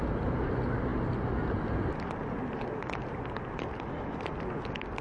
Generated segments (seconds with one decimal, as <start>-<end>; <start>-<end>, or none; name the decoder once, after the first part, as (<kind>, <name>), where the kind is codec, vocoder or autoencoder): none